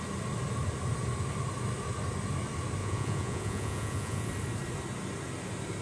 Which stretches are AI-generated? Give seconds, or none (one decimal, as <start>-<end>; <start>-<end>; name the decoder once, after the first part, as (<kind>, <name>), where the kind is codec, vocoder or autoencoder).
2.8-4.3 (vocoder, Vocos)